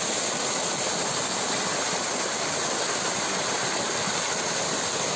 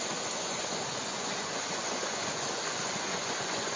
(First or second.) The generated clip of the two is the second